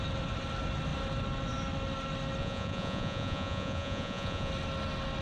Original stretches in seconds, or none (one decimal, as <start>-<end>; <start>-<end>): 0.0-2.4; 4.5-5.2